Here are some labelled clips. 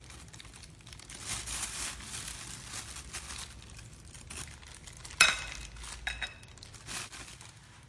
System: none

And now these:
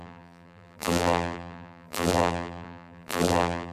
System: vocoder, BigVGAN v2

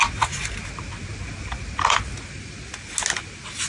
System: none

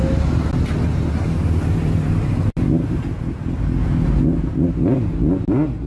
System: none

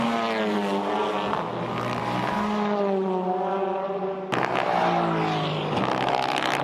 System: none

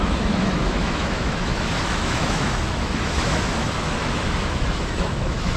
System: autoencoder, DAC-VAE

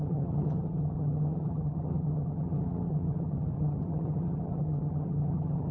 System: vocoder, HiFi-GAN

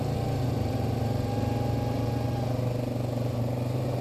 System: none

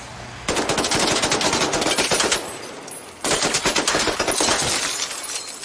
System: none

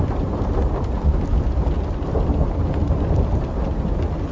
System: none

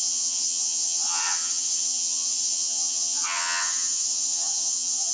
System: vocoder, HiFi-GAN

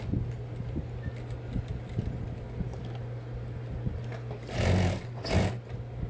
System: none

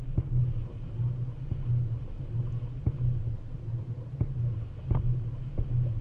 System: none